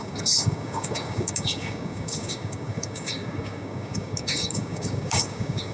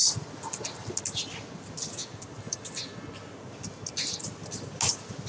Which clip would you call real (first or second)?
second